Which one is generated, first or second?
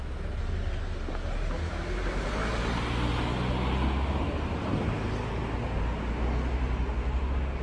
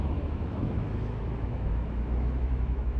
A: second